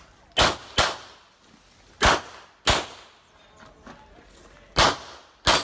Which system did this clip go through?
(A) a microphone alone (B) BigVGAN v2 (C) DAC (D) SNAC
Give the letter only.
A